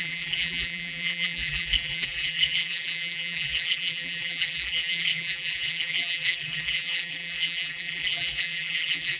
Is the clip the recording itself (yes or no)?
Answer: no